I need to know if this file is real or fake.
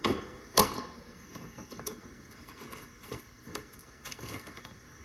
fake